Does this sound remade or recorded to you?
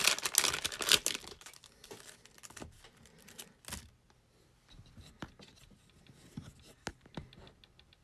recorded